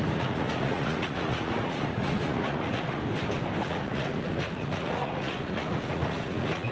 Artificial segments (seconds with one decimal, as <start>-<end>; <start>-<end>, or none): 0.0-3.0; 3.6-6.7